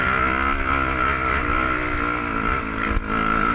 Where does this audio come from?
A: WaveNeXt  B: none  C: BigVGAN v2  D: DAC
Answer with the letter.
B